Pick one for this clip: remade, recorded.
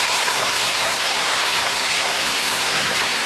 remade